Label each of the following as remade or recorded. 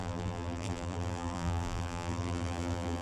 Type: remade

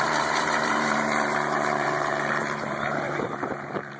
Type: remade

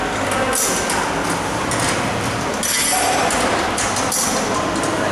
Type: recorded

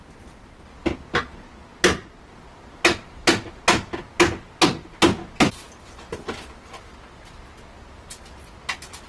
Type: recorded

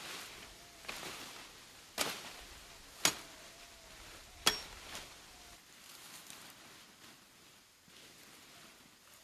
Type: recorded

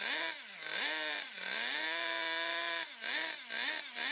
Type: recorded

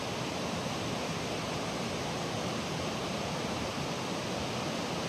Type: recorded